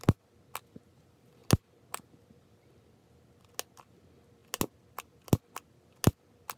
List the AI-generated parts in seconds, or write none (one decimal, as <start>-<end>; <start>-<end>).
none